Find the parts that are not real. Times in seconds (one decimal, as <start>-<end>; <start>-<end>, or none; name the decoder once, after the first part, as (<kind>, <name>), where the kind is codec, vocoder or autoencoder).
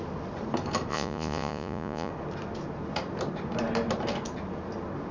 0.9-2.1 (vocoder, Vocos)